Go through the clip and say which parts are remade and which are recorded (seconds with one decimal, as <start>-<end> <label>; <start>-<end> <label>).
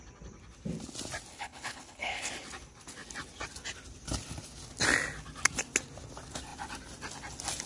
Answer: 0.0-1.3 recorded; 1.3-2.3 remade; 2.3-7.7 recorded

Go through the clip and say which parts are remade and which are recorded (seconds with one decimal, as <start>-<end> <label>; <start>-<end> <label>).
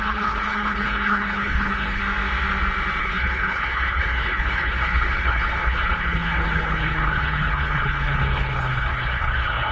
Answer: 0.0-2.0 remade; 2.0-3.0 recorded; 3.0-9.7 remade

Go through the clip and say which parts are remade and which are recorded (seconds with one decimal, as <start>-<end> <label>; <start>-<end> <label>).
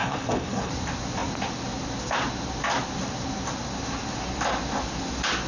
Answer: 0.0-0.7 remade; 0.7-5.5 recorded